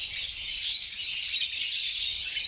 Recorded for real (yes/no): yes